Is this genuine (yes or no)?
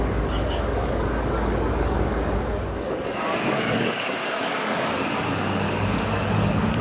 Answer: no